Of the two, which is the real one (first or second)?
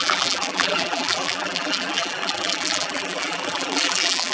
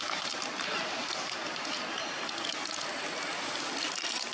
second